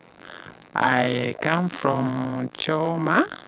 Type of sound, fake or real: fake